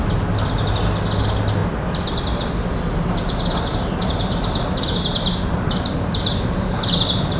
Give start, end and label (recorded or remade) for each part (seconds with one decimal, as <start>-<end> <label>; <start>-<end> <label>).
0.0-7.4 recorded